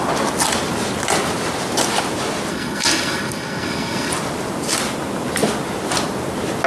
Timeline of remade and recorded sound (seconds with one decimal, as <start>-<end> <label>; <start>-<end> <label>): 0.0-2.5 recorded; 2.5-4.1 remade; 4.1-6.7 recorded